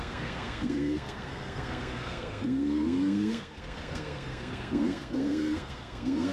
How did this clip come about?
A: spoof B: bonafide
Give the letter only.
A